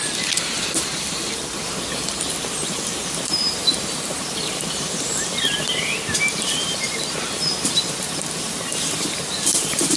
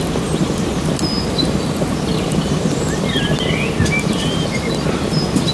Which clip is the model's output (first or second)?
first